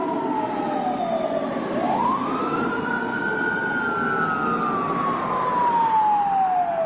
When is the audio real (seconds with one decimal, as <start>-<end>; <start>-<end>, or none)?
0.0-6.9